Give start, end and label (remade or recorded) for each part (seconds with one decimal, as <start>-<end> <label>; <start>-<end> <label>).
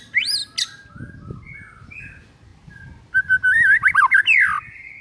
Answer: 0.0-5.0 recorded